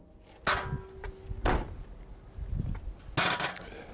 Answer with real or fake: real